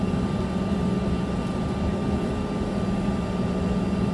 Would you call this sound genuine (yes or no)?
yes